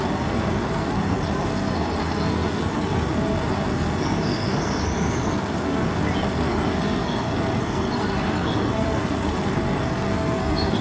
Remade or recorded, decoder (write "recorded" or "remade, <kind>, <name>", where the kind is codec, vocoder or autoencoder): remade, codec, SNAC